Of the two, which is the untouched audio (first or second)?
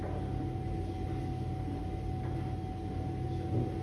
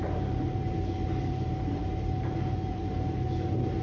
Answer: first